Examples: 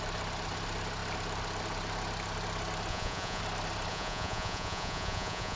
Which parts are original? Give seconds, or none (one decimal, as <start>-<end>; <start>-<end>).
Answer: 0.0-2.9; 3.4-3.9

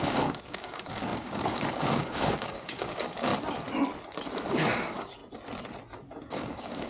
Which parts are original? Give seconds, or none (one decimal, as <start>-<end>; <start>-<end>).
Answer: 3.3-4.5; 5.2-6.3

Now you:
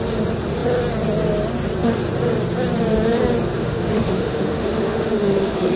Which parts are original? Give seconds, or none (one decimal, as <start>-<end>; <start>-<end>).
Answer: 0.0-3.6

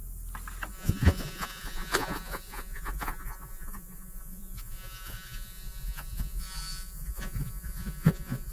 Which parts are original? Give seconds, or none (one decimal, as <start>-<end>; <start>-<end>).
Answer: 0.0-0.7

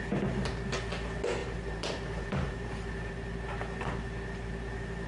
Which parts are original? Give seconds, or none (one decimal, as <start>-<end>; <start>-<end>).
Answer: 0.0-1.4; 3.1-5.1

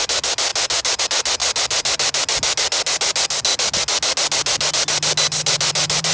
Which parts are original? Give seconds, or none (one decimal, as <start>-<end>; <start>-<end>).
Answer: 0.0-6.1

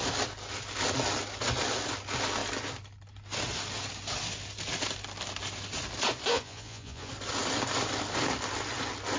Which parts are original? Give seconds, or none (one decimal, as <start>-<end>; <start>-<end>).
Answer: 0.0-6.3; 7.1-9.2